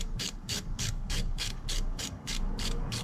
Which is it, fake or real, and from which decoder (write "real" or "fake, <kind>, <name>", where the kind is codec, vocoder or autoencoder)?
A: fake, codec, DAC